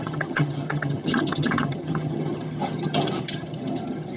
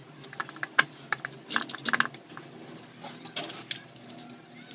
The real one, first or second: second